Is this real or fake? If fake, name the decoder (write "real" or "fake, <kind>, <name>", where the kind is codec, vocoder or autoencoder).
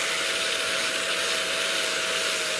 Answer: real